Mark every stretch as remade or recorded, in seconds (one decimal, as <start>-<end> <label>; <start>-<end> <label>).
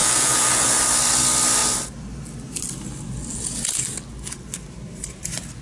0.0-0.8 remade; 0.8-5.6 recorded